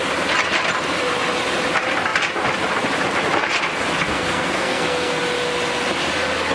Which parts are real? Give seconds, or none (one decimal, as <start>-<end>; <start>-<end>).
0.0-4.1; 5.2-6.5